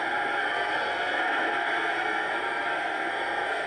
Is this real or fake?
fake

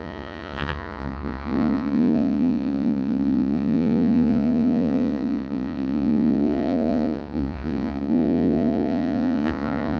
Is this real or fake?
fake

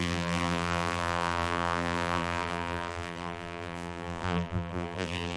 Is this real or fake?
fake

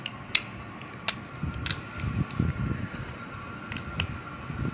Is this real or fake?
real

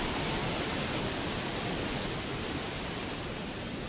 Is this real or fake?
real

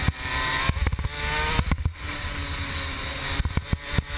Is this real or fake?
real